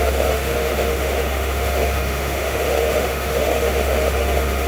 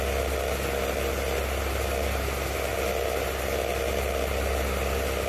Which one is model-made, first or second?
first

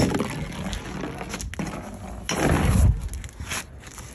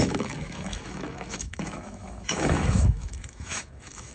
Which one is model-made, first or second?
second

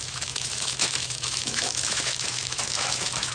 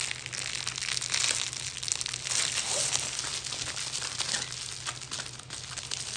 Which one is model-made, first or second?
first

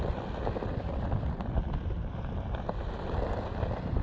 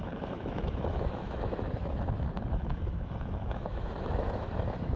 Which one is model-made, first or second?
second